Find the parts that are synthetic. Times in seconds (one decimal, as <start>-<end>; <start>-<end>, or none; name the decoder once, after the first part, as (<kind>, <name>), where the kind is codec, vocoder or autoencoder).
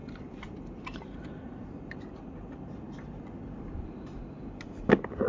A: 0.0-4.2 (vocoder, BigVGAN v2)